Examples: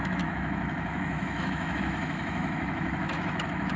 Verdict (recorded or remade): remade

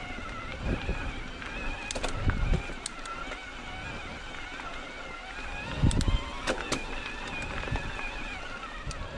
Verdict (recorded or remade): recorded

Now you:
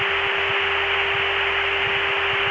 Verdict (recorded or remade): recorded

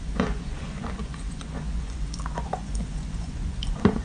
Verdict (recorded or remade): remade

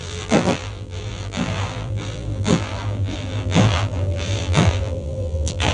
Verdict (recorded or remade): remade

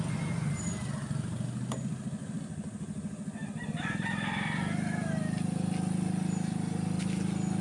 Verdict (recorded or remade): recorded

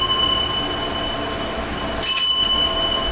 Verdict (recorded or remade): recorded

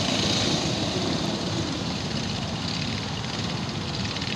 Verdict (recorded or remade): recorded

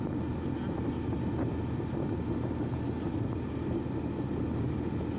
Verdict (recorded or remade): recorded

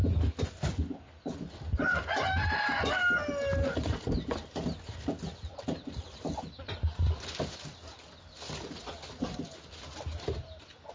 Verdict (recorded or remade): recorded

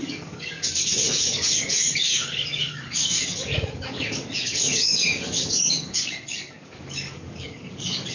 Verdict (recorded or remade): remade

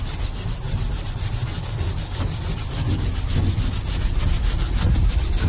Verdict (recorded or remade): recorded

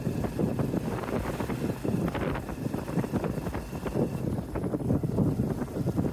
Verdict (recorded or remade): recorded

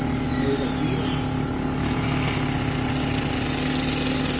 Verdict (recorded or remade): recorded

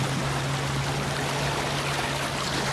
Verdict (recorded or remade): recorded